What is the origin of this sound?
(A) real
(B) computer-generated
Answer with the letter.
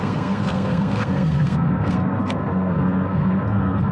B